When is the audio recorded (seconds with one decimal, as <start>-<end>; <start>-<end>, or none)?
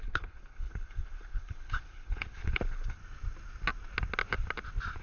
3.0-5.0